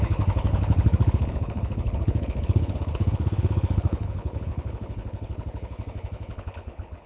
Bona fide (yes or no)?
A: no